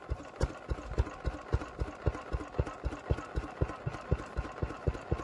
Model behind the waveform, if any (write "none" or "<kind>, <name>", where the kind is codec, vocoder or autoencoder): none